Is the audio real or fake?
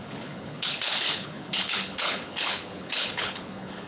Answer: fake